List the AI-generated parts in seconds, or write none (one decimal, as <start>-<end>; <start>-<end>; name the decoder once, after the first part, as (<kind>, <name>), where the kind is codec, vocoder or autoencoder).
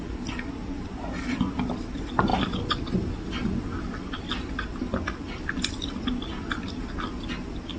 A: 2.3-4.6 (vocoder, BigVGAN v2)